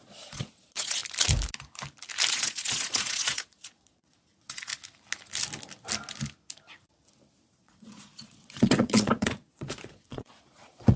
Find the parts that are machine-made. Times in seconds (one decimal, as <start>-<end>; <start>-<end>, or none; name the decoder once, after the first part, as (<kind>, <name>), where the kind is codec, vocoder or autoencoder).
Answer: 0.0-1.0 (vocoder, Vocos); 2.3-4.7; 7.5-11.0